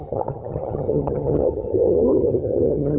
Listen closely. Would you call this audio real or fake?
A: fake